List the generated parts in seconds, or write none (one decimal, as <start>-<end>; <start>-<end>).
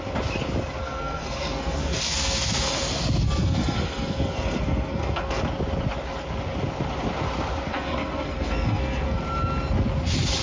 0.8-5.4; 7.7-9.2